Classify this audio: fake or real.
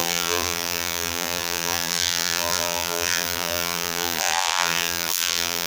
fake